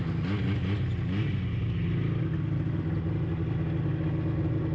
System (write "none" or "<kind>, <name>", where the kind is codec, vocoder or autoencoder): none